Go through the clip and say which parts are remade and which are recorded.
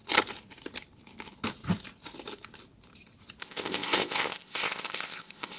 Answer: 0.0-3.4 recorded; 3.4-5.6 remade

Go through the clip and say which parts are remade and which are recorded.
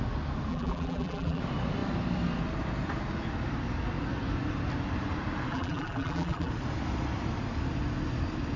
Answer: 0.0-0.5 recorded; 0.5-1.4 remade; 1.4-5.5 recorded; 5.5-6.5 remade; 6.5-8.6 recorded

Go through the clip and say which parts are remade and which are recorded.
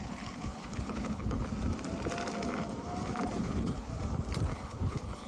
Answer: 0.0-1.5 remade; 1.5-3.4 recorded; 3.4-3.9 remade; 3.9-4.5 recorded; 4.5-5.3 remade